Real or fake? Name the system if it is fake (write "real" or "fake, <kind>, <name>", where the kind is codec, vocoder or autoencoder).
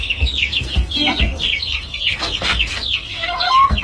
fake, codec, SNAC